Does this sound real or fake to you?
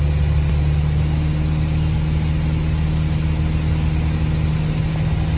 real